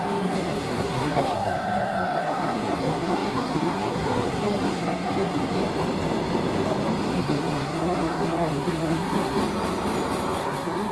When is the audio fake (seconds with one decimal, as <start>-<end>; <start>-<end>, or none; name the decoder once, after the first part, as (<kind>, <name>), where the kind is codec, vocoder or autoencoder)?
0.0-5.6 (codec, SNAC); 7.0-9.4; 10.4-10.9